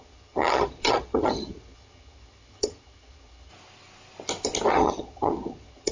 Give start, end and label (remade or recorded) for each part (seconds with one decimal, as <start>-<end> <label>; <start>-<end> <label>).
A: 0.0-3.5 remade; 3.5-4.7 recorded; 4.7-5.9 remade